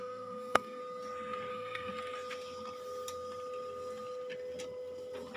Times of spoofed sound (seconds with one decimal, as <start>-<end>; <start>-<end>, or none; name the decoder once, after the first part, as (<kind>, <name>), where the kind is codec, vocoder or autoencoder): 0.0-0.8 (codec, SNAC); 1.5-1.9